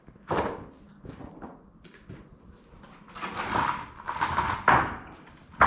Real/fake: real